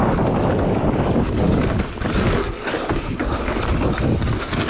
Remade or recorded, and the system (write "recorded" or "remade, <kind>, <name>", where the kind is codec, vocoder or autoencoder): remade, codec, DAC